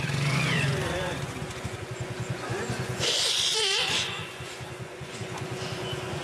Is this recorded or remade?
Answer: remade